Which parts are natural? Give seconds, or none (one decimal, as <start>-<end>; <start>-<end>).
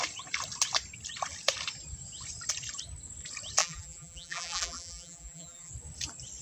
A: 0.0-3.6; 5.7-6.4